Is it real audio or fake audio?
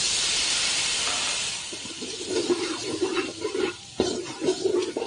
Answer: fake